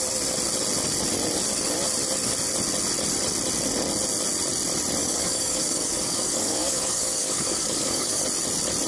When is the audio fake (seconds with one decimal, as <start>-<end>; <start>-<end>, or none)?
5.0-8.2